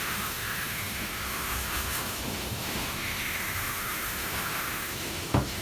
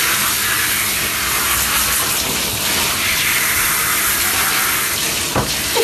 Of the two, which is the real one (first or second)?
second